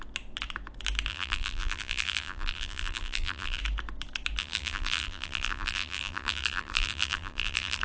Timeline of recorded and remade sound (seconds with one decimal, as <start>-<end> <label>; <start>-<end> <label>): 0.0-1.1 recorded; 1.1-3.6 remade; 3.6-4.4 recorded; 4.4-7.8 remade

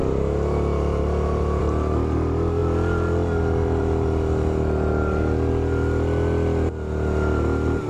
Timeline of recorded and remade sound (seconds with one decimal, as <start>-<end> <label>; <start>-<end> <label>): 0.0-7.9 recorded